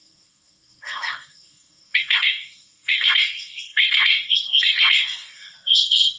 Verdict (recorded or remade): remade